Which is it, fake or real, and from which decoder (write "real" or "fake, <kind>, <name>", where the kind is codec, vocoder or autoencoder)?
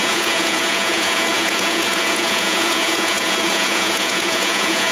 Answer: fake, vocoder, Vocos